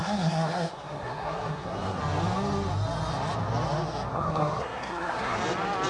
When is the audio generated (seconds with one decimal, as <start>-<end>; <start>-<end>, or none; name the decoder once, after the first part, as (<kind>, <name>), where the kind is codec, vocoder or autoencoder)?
0.0-2.0 (codec, SNAC); 4.1-5.4

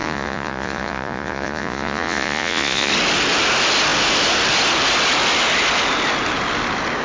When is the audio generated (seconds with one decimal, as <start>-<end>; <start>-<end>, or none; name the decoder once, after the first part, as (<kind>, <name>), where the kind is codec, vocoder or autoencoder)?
0.0-2.9 (vocoder, Vocos)

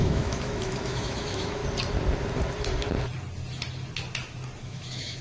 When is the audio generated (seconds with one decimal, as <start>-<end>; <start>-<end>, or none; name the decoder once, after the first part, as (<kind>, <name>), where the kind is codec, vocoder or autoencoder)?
0.0-1.6 (autoencoder, DAC-VAE); 4.6-5.2

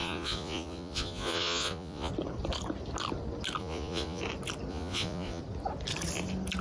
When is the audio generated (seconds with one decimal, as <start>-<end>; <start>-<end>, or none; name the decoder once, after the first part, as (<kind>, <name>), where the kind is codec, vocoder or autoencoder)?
0.0-2.1 (vocoder, Vocos); 3.6-4.2; 4.7-5.4

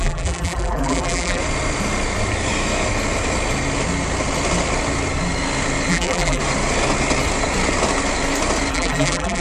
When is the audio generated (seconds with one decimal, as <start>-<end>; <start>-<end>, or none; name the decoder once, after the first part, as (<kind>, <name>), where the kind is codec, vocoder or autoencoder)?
0.0-1.4 (vocoder, BigVGAN v2); 5.9-6.4; 8.7-9.4

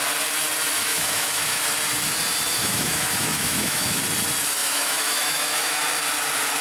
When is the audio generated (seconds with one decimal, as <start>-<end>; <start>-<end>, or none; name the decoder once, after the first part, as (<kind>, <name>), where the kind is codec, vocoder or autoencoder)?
0.8-1.6 (autoencoder, DAC-VAE); 2.6-4.0; 4.6-5.8